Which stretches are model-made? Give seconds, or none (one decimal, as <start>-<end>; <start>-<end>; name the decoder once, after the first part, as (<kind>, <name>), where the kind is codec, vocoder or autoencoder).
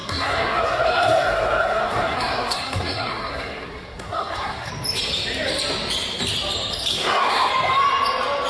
0.0-4.7 (codec, SNAC); 6.9-7.5